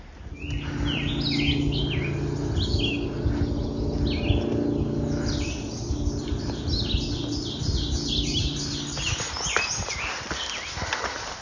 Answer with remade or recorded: recorded